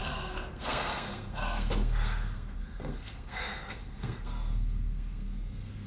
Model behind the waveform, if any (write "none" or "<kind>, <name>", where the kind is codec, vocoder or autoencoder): codec, SNAC